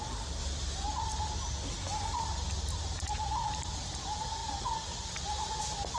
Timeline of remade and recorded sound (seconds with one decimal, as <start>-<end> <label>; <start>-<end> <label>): 0.0-6.0 recorded